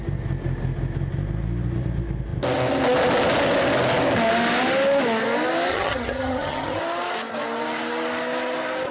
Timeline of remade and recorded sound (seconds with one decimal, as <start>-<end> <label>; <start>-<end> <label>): 0.0-5.7 recorded; 5.7-6.8 remade; 6.8-8.9 recorded